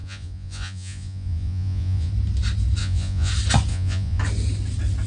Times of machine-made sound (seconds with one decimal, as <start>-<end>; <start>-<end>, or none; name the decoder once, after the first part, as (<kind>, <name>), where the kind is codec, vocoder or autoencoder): 0.0-2.1 (vocoder, Vocos); 2.8-3.3; 3.7-4.2